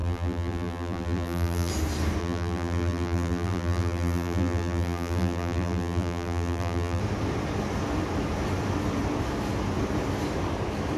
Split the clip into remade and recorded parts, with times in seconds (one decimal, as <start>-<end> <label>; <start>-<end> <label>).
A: 0.0-1.7 remade; 1.7-2.2 recorded; 2.2-7.0 remade; 7.0-11.0 recorded